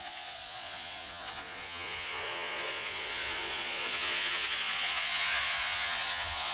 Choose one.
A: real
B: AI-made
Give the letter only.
B